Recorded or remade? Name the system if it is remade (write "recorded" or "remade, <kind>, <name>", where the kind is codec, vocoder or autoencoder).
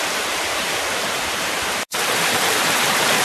remade, vocoder, BigVGAN v2